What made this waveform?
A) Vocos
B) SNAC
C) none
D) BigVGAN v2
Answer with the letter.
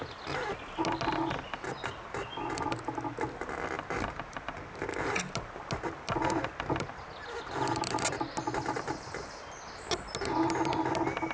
C